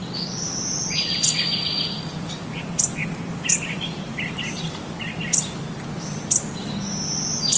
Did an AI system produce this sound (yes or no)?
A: no